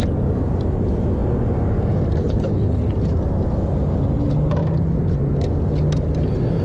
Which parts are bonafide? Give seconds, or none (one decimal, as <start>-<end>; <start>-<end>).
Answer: 0.0-2.2; 2.8-6.6

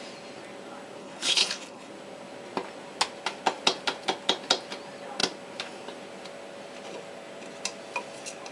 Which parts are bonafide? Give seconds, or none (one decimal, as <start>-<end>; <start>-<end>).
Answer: 0.0-1.0; 1.9-8.5

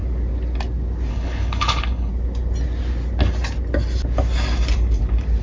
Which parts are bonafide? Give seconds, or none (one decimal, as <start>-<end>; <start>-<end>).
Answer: 0.0-1.1; 2.1-5.4

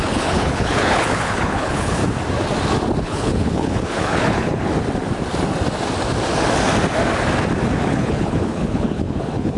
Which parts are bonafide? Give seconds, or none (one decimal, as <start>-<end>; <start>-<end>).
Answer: 2.0-3.0; 4.7-7.9